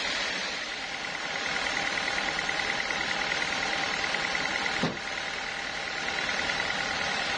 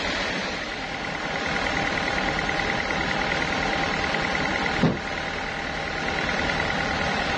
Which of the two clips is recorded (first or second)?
second